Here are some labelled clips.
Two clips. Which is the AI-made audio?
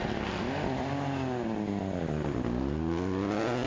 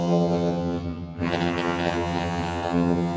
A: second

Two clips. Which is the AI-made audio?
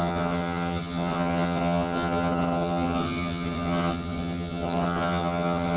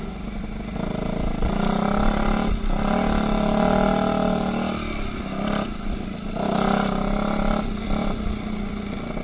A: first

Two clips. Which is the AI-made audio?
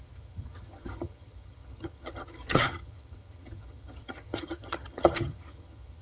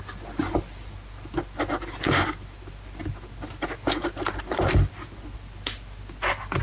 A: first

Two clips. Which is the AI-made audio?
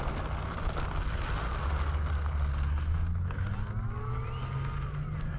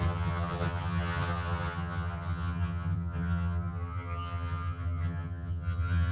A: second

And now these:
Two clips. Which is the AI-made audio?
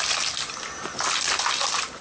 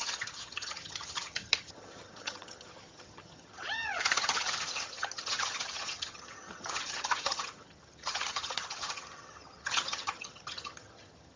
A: second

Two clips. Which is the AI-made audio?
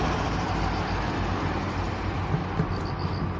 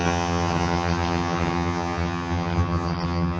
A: second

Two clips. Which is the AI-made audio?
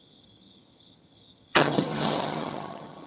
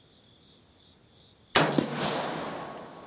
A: first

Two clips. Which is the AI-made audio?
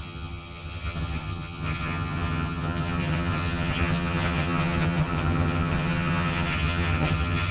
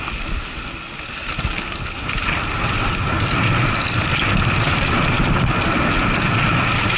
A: first